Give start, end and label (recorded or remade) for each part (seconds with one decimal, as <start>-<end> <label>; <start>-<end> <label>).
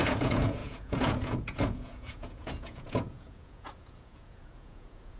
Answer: 0.0-5.2 remade